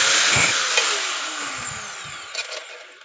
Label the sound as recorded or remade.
recorded